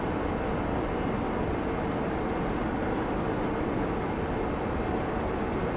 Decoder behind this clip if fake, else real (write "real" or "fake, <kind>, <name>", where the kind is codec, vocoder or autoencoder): real